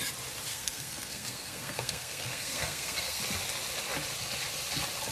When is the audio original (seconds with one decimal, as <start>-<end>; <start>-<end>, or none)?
0.0-0.5; 3.2-5.1